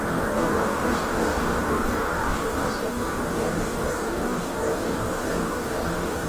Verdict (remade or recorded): remade